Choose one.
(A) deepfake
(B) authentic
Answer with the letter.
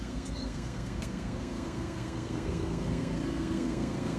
A